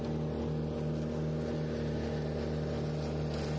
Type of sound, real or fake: real